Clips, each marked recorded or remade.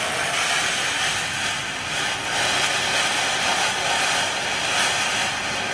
recorded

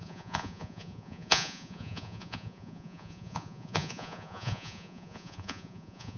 remade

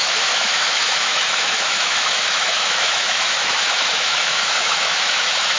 remade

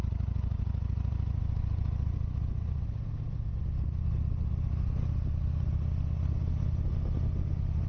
recorded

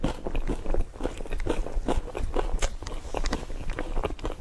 recorded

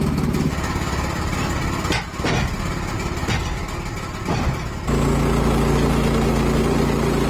recorded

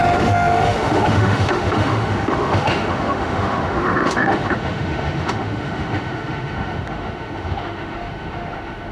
remade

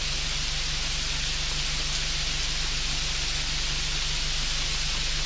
recorded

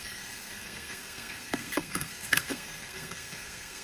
remade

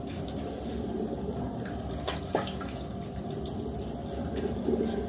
recorded